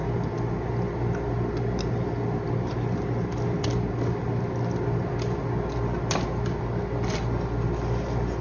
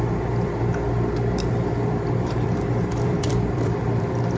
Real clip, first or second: first